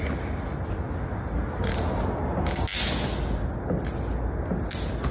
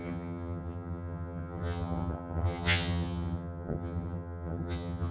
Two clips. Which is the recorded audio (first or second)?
first